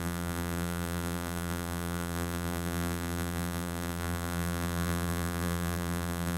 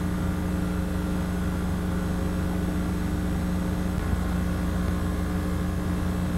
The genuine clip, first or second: second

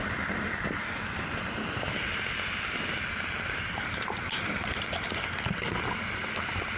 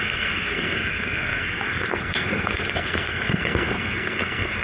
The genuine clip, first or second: first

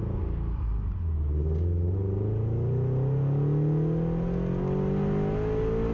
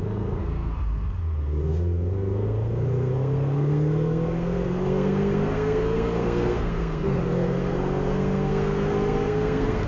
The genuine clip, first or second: first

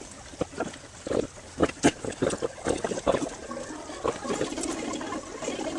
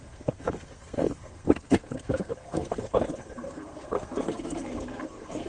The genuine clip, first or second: first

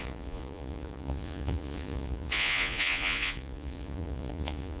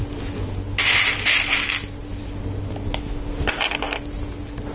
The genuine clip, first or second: second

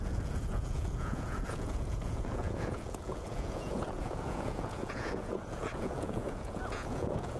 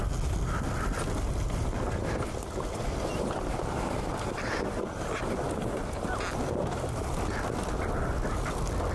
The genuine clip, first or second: second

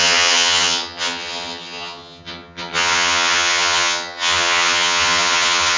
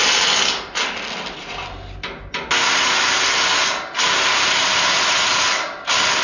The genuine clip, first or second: second